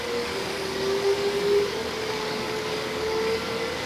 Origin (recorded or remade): remade